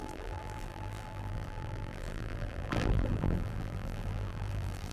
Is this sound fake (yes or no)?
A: yes